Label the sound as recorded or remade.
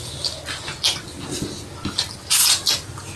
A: recorded